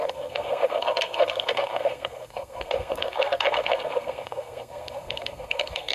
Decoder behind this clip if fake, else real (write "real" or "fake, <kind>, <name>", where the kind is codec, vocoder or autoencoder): fake, codec, SNAC